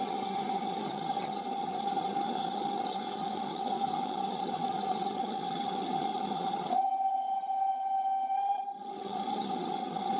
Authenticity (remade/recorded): remade